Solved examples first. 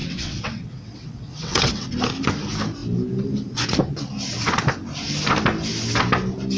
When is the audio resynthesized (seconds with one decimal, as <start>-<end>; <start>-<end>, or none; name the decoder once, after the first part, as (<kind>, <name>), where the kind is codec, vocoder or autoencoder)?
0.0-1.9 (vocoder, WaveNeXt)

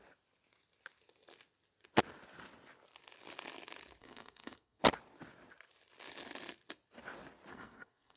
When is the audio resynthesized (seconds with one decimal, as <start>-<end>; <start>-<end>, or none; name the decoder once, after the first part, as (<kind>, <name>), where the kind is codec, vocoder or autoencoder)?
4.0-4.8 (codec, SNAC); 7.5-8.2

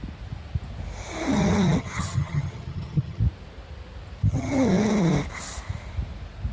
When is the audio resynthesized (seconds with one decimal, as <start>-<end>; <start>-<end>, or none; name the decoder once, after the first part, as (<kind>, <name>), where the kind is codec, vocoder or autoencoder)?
1.3-3.2 (vocoder, HiFi-GAN); 4.3-4.9

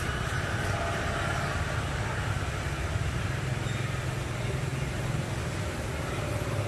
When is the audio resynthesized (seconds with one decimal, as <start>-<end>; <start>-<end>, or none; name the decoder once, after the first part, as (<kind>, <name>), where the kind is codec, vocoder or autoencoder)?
none